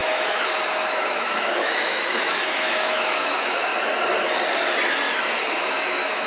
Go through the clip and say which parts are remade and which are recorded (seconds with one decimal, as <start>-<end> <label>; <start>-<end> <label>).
0.0-3.7 remade; 3.7-5.4 recorded; 5.4-6.3 remade